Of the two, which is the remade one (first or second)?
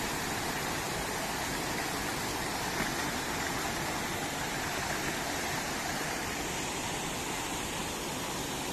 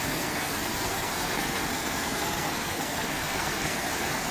second